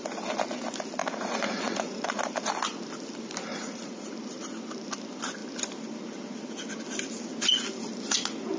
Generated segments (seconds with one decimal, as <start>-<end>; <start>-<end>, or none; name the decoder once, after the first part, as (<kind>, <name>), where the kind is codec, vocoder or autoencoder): 1.0-2.2 (vocoder, Vocos); 3.5-4.1